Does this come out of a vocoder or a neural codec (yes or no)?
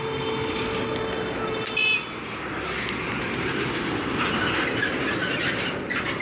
no